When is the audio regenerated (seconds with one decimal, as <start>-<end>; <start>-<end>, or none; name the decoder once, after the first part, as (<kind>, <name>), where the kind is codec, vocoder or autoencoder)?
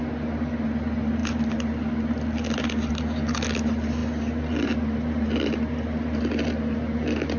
none